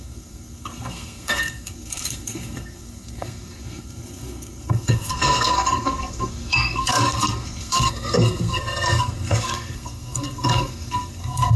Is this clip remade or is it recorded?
remade